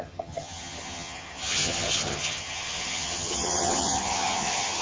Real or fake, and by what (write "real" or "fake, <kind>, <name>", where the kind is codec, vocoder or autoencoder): fake, vocoder, HiFi-GAN